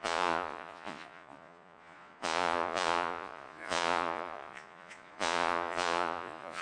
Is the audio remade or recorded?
remade